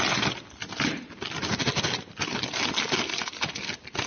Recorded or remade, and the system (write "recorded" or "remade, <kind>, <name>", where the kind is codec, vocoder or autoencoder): recorded